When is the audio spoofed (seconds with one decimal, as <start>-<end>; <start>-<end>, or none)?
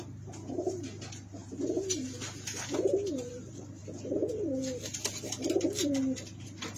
1.4-3.3